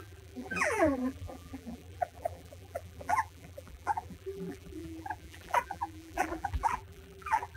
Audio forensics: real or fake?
fake